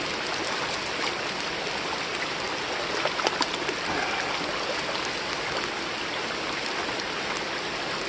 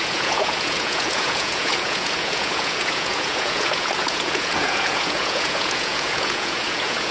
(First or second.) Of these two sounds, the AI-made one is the second